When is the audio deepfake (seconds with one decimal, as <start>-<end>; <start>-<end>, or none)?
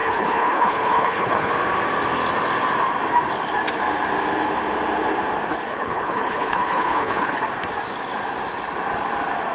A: 0.0-1.5; 5.5-7.4